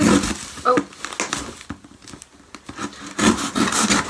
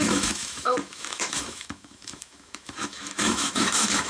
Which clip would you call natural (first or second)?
first